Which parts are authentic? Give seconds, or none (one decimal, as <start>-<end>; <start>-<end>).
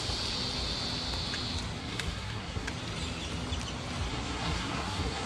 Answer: 0.0-1.8; 2.7-4.1